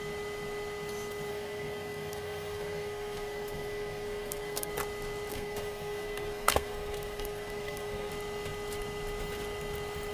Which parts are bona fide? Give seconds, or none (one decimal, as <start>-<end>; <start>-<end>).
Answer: 0.0-1.3; 4.7-5.3; 8.1-10.1